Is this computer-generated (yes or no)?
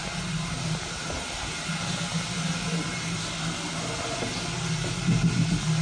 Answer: no